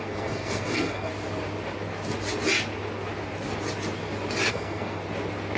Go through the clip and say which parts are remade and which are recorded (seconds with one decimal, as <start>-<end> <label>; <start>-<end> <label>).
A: 0.0-1.1 remade; 1.1-4.5 recorded; 4.5-5.0 remade; 5.0-5.6 recorded